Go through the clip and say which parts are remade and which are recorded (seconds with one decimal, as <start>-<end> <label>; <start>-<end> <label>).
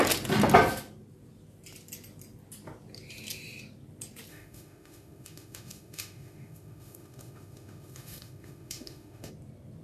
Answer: 0.0-4.3 recorded; 4.3-9.3 remade; 9.3-9.8 recorded